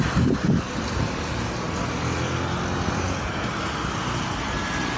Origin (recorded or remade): recorded